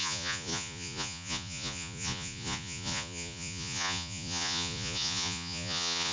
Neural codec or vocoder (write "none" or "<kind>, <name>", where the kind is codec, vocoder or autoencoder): vocoder, Vocos